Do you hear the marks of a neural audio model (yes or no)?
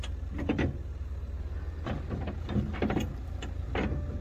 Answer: no